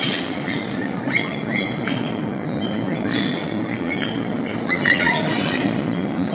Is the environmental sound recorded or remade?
remade